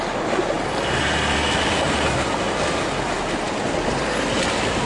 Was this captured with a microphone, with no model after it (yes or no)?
yes